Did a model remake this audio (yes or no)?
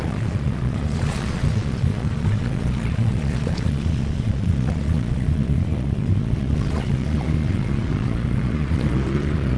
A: yes